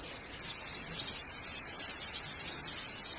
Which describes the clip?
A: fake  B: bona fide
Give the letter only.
B